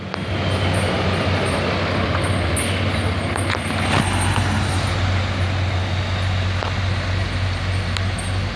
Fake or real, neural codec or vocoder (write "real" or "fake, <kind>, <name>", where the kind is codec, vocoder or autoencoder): real